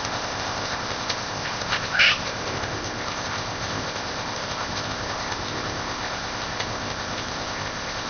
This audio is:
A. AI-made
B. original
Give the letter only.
A